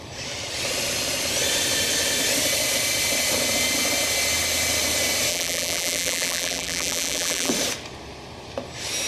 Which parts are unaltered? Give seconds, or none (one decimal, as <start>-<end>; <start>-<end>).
0.0-5.3; 7.5-9.1